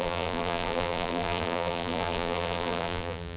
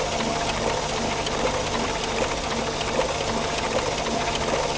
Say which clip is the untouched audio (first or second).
second